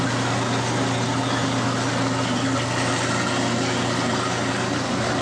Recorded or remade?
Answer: recorded